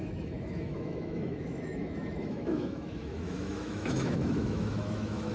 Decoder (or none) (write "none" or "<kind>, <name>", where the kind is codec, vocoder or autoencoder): autoencoder, DAC-VAE